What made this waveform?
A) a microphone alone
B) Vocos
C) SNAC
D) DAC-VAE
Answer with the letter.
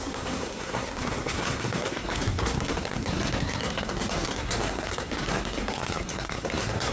C